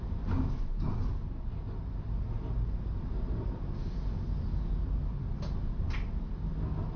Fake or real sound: real